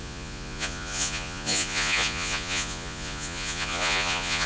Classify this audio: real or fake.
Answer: fake